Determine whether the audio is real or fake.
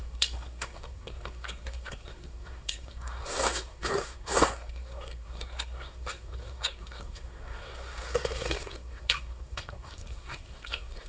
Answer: fake